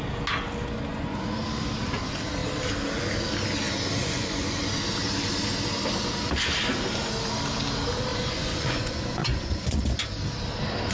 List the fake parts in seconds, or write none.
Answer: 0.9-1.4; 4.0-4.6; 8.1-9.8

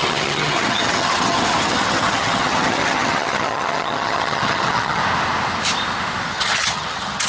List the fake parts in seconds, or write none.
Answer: 0.0-5.0; 6.3-7.3

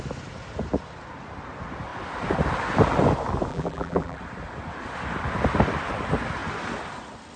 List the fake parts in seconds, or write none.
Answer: 3.5-4.2

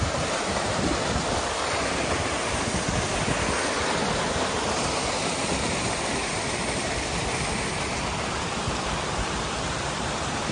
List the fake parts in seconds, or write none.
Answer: none

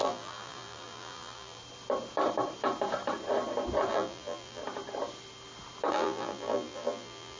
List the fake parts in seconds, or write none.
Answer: 0.0-1.6; 3.9-4.6; 5.9-7.4

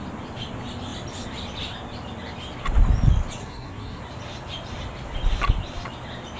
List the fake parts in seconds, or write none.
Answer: 3.4-4.0

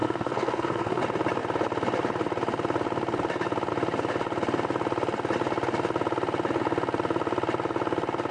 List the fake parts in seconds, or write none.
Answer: 0.0-1.0

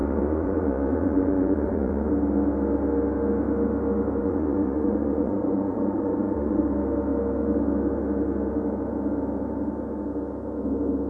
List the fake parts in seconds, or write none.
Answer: 0.0-2.1; 4.2-6.6